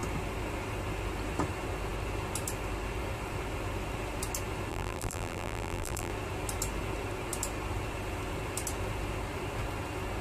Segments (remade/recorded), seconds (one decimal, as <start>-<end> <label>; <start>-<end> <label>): 0.0-4.7 recorded; 4.7-6.1 remade; 6.1-10.2 recorded